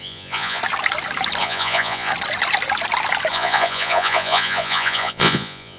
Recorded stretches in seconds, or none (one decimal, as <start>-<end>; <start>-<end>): 0.6-1.4; 2.1-3.3